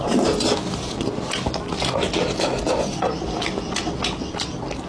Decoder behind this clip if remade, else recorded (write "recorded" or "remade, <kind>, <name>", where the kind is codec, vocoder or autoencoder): recorded